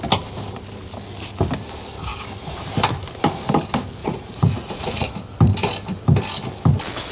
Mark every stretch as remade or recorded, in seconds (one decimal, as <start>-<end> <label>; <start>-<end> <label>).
0.0-4.0 recorded; 4.0-5.1 remade; 5.1-7.1 recorded